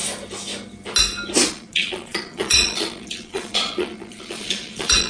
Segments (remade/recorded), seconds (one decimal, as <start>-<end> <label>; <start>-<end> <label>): 0.0-1.5 recorded; 1.5-5.1 remade

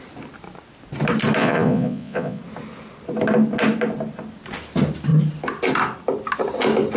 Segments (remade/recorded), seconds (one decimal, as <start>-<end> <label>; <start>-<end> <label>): 0.0-1.4 recorded; 1.4-2.4 remade; 2.4-7.0 recorded

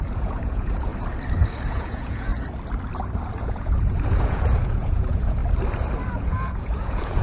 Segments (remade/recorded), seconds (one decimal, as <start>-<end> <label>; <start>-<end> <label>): 0.0-0.9 remade; 0.9-1.7 recorded; 1.7-2.3 remade; 2.3-3.4 recorded; 3.4-5.4 remade; 5.4-6.1 recorded; 6.1-7.2 remade

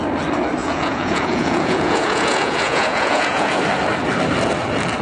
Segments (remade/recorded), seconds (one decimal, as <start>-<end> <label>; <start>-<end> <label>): 0.0-0.6 recorded; 0.6-3.6 remade; 3.6-5.0 recorded

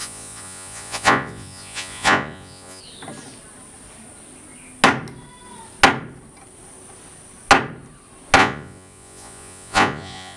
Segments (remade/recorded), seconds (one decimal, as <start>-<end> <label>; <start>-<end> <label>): 0.0-2.8 remade; 2.8-8.4 recorded; 8.4-10.4 remade

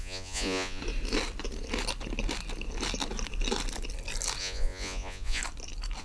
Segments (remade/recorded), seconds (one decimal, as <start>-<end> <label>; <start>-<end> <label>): 0.0-0.8 remade; 0.8-4.4 recorded; 4.4-5.4 remade; 5.4-6.0 recorded